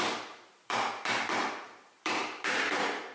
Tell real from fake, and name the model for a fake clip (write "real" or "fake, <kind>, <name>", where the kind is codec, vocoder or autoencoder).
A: fake, vocoder, BigVGAN v2